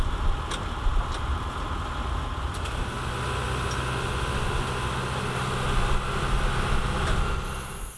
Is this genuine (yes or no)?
yes